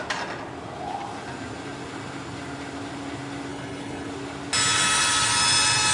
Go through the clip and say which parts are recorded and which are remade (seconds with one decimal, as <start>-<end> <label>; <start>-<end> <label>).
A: 0.0-3.5 recorded; 3.5-4.1 remade; 4.1-5.9 recorded